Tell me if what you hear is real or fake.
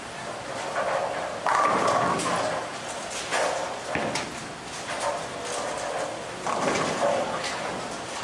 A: real